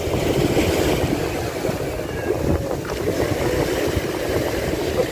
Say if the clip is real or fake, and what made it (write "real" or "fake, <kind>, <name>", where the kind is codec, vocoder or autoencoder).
real